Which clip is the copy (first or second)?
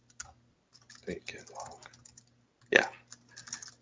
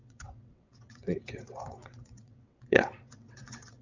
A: second